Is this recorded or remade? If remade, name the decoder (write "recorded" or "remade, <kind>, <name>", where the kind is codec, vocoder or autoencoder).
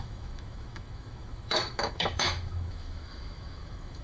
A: remade, autoencoder, DAC-VAE